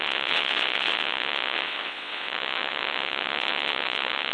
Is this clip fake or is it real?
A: fake